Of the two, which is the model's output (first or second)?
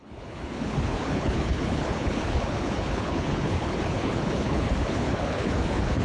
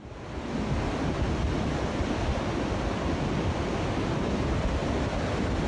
first